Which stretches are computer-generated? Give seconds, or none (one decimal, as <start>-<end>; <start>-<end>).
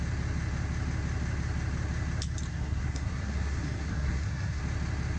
2.5-4.6